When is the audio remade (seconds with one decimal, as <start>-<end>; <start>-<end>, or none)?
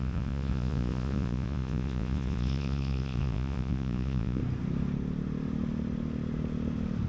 0.0-4.4